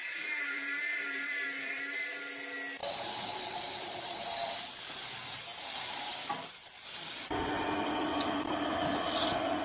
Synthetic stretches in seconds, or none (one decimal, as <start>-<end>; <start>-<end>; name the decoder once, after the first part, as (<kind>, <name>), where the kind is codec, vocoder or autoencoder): 0.0-2.1 (vocoder, BigVGAN v2)

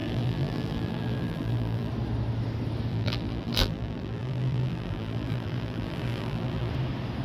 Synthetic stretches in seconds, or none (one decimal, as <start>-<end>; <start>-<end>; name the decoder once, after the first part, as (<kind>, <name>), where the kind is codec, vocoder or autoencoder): 0.0-1.9 (vocoder, BigVGAN v2); 2.9-6.7

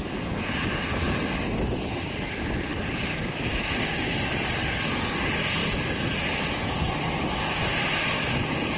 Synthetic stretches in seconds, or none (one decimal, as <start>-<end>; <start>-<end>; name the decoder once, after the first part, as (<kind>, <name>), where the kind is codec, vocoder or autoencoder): 2.7-4.8 (vocoder, BigVGAN v2); 5.6-7.3

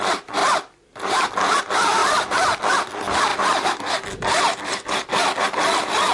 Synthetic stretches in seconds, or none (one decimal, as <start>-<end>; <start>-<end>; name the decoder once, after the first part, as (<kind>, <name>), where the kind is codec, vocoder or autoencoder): none